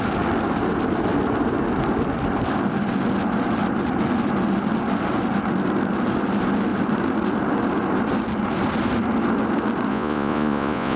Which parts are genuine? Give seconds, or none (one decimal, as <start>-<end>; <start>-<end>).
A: 0.0-9.9